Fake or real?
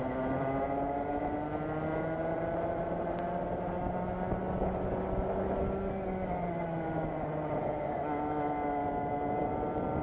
real